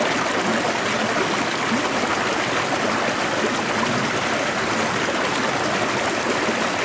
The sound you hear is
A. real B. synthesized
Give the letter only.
A